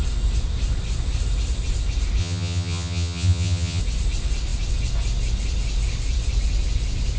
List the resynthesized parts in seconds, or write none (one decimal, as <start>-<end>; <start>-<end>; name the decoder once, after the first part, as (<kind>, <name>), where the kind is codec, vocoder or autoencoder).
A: 2.2-3.8 (vocoder, HiFi-GAN)